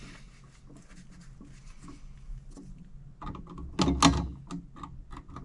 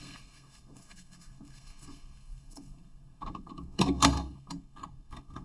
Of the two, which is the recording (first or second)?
first